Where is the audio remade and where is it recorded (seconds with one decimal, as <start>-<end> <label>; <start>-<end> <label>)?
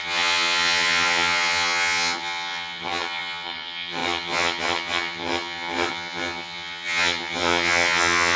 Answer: 0.0-8.4 remade